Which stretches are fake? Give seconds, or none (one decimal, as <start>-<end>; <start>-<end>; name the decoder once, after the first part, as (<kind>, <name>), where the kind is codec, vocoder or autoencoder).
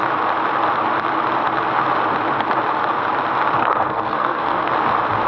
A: 3.6-4.7 (codec, SNAC)